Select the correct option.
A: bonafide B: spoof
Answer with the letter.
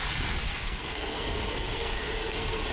B